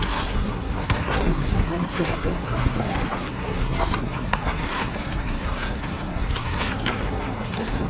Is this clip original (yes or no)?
no